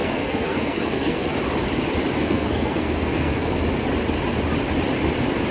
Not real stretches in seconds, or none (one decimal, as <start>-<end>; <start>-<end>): 0.0-1.3; 2.2-3.6